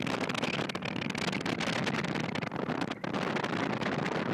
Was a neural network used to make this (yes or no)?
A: no